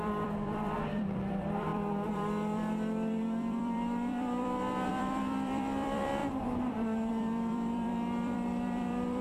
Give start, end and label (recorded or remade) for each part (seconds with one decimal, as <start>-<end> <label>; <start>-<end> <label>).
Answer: 0.0-9.2 remade